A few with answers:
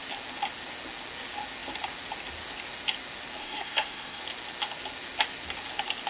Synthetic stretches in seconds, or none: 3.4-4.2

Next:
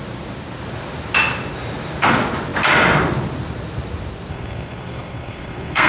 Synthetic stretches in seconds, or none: 4.3-5.9

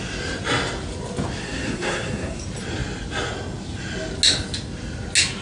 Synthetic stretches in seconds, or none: 1.4-2.4

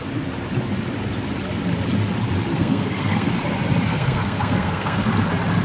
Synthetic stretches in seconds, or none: 2.5-3.3; 3.9-5.0

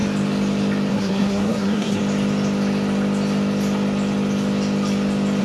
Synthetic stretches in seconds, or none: 0.9-2.0

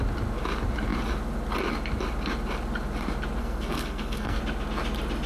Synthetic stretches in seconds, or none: 3.4-4.4

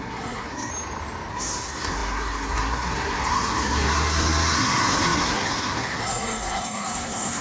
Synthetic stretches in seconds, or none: 0.0-0.7; 1.3-7.4

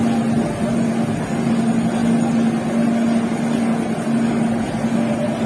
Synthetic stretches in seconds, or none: none